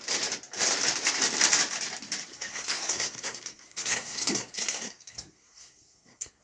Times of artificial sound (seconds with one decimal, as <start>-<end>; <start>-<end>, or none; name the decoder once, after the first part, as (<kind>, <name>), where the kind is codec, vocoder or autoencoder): 2.3-6.4 (codec, SNAC)